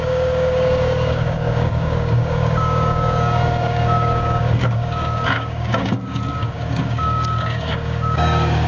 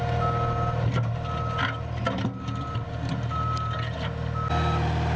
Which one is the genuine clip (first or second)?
second